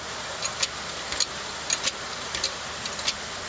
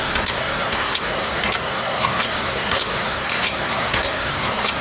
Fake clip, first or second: second